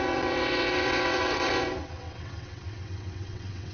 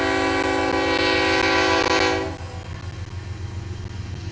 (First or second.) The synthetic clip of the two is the first